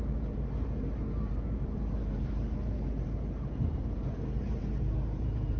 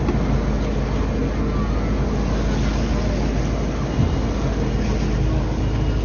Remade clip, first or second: first